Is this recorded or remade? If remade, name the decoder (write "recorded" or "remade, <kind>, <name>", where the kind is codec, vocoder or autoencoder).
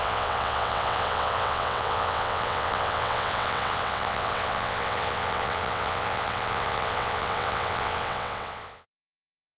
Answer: remade, vocoder, WaveNeXt